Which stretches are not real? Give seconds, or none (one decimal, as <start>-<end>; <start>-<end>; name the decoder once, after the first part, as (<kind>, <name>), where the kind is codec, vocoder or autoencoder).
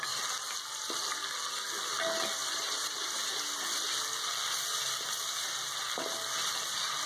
2.4-3.2 (vocoder, BigVGAN v2)